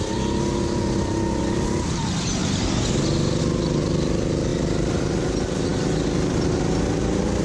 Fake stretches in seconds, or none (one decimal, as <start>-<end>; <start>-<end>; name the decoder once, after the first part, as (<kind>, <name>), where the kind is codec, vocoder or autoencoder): none